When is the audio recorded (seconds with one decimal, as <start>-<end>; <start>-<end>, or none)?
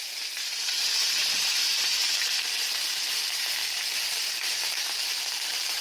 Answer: none